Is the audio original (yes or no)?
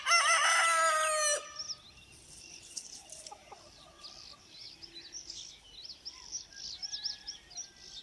yes